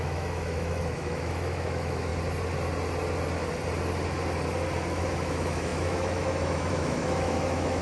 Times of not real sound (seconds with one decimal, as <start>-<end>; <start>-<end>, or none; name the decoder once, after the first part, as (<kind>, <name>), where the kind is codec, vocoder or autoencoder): 0.0-2.1 (autoencoder, DAC-VAE); 4.9-7.8